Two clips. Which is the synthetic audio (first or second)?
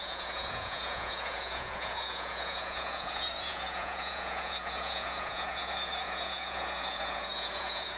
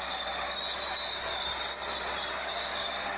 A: first